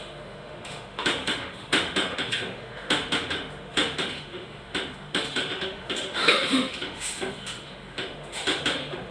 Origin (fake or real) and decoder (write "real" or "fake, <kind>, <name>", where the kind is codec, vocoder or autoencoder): fake, autoencoder, DAC-VAE